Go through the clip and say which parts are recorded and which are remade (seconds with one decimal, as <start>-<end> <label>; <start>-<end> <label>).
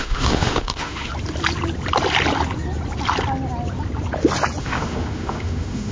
0.0-1.1 remade; 1.1-4.6 recorded; 4.6-5.9 remade